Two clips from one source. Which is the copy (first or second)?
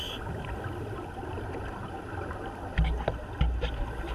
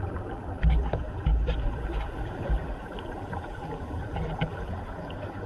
second